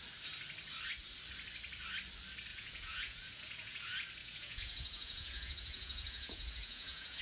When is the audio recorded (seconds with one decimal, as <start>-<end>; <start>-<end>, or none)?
0.0-2.5; 3.8-4.2